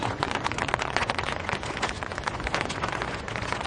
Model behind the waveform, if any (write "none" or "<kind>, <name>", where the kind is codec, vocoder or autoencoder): vocoder, Vocos